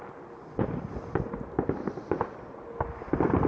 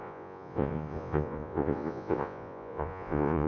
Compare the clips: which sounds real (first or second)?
first